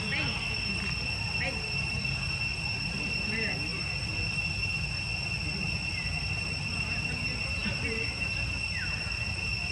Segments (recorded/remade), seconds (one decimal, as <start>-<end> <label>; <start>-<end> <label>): 0.0-9.7 recorded